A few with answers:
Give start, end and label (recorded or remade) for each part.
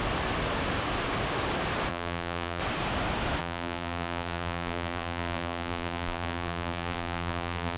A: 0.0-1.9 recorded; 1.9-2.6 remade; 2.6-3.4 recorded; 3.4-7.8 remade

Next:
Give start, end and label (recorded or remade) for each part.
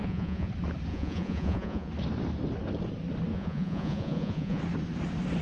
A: 0.0-0.5 remade; 0.5-0.9 recorded; 0.9-1.9 remade; 1.9-3.3 recorded; 3.3-4.6 remade; 4.6-5.4 recorded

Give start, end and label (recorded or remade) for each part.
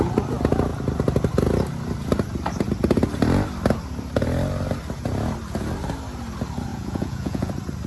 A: 0.0-6.7 recorded; 6.7-7.5 remade; 7.5-7.9 recorded